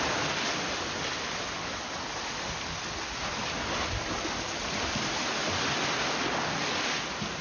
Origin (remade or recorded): recorded